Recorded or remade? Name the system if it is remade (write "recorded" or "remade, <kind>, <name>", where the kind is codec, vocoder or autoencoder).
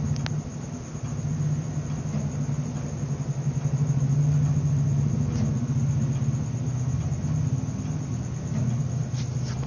recorded